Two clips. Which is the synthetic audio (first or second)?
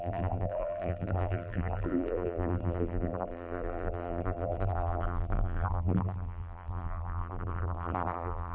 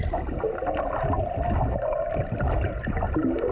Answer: first